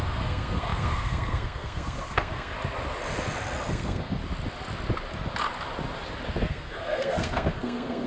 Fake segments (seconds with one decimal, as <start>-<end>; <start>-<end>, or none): 0.0-2.5; 3.7-4.2; 6.5-8.1